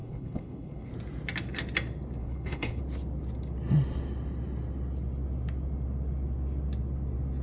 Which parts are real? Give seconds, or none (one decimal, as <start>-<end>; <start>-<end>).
0.9-2.2; 2.8-7.4

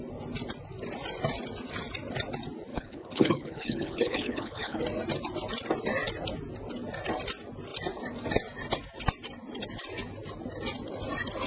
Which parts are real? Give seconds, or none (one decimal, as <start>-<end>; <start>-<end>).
0.0-2.7; 4.8-11.5

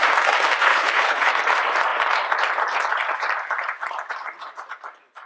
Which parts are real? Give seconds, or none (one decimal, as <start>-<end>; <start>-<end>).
0.0-0.7; 1.3-5.3

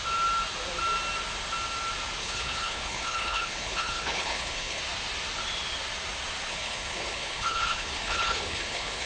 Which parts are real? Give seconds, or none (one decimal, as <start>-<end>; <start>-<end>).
0.0-2.2; 4.8-6.5

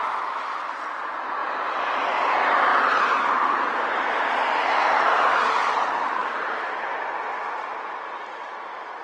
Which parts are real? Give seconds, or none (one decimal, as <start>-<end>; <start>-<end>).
0.0-9.0